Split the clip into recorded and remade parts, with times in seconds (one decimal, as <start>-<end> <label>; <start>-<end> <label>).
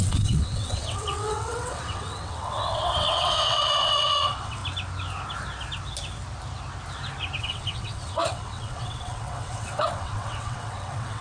0.0-4.6 remade; 4.6-7.4 recorded; 7.4-11.2 remade